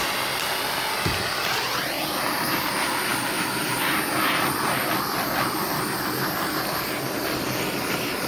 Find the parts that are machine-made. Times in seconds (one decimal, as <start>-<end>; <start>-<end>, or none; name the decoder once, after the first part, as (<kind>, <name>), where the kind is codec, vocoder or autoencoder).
3.1-8.3 (vocoder, BigVGAN v2)